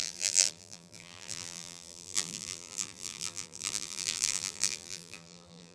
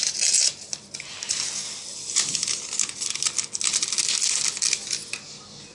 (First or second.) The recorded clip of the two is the second